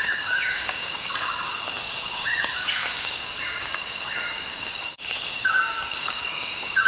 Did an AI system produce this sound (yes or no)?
yes